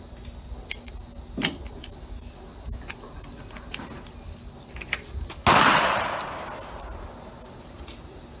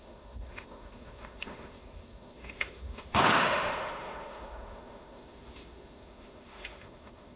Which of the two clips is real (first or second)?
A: first